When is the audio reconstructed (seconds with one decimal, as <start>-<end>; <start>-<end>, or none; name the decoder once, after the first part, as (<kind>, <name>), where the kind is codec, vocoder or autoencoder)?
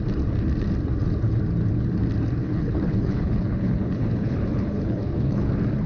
2.4-5.5 (codec, HILCodec)